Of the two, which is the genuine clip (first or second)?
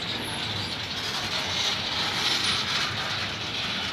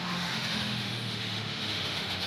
first